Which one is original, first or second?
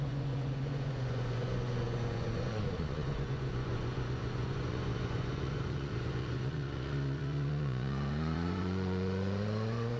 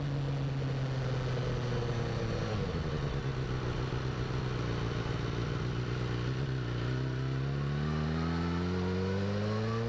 second